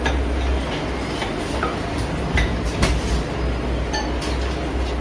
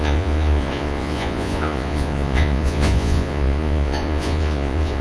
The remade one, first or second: second